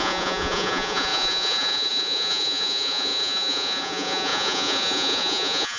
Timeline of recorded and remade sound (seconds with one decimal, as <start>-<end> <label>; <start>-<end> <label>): 0.0-5.8 remade